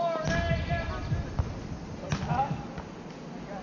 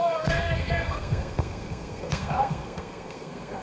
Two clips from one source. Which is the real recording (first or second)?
first